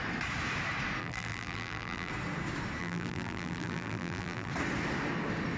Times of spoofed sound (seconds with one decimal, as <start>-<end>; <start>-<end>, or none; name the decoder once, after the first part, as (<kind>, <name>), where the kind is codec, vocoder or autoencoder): 1.0-2.1 (vocoder, BigVGAN v2); 2.8-4.5